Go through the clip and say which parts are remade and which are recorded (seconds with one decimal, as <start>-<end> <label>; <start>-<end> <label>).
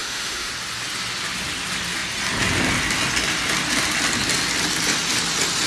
0.0-0.5 remade; 0.5-5.7 recorded